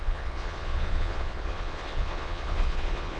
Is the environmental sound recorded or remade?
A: remade